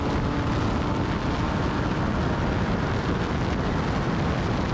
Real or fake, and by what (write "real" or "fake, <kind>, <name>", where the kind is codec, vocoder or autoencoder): real